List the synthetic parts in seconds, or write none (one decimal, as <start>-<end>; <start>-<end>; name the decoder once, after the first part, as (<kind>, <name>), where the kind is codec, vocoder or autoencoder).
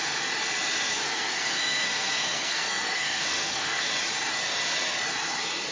0.9-3.9 (codec, SNAC)